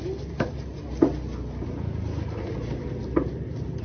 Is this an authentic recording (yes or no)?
yes